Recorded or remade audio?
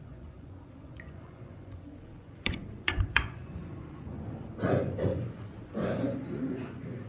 remade